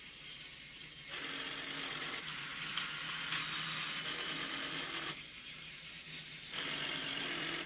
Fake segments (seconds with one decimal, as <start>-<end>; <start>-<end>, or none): 0.0-0.8; 2.0-2.5; 5.3-7.7